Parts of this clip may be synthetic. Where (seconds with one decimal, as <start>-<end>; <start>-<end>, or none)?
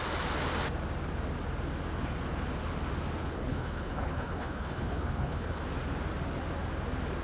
3.2-5.6